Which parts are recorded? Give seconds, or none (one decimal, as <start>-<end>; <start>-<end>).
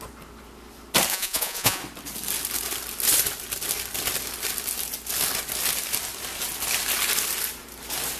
0.0-1.1; 1.8-8.2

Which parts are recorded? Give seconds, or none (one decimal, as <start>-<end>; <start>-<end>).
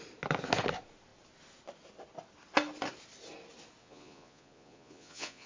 0.0-3.8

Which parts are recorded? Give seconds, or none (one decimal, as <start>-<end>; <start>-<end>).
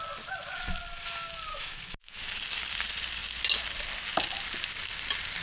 0.0-1.5; 2.4-5.4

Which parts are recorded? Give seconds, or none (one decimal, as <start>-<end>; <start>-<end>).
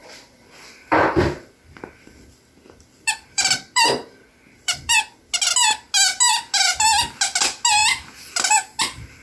5.0-9.2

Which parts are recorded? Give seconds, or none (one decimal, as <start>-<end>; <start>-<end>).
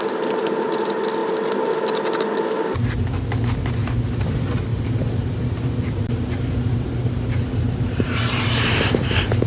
0.0-4.7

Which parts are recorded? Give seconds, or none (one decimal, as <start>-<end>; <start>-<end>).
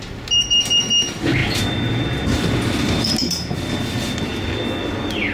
0.0-5.3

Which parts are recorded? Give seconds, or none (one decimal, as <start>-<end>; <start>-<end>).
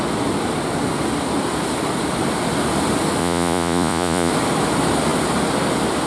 0.0-3.2; 4.3-6.1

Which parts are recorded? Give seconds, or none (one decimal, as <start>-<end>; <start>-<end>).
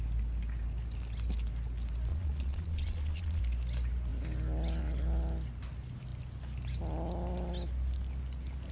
0.0-2.1; 3.4-8.7